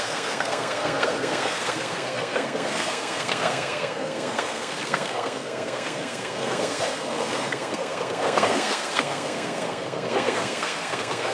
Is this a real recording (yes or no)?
no